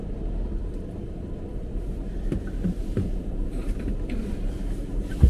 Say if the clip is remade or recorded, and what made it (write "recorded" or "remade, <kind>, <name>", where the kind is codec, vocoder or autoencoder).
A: remade, vocoder, BigVGAN v2